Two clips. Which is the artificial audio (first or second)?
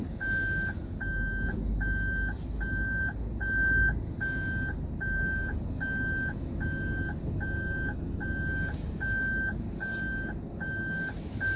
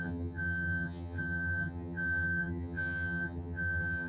second